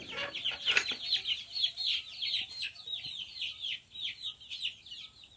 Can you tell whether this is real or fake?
real